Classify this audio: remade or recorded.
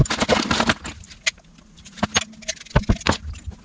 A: recorded